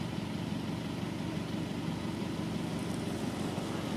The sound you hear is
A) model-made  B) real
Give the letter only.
B